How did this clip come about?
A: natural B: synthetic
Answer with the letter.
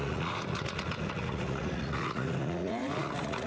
B